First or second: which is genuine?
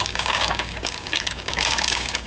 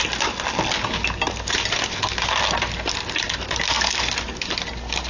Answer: second